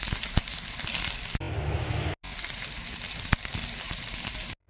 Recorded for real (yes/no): yes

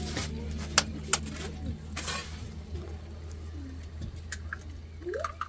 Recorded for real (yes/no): yes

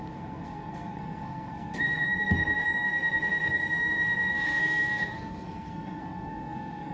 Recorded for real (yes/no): no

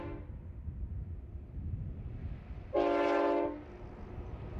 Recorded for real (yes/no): yes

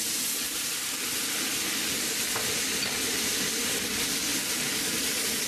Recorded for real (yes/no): yes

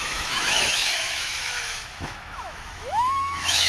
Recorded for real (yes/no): no